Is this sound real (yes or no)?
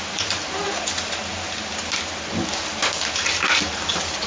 yes